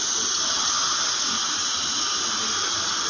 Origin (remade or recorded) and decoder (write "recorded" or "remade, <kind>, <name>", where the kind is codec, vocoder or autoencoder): recorded